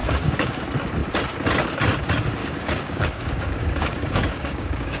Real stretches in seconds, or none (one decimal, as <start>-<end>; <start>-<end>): 0.6-2.4